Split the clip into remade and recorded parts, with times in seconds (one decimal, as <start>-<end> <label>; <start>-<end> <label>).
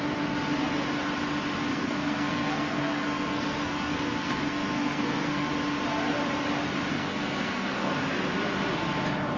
0.0-1.7 recorded; 1.7-5.5 remade; 5.5-6.9 recorded; 6.9-7.9 remade; 7.9-9.4 recorded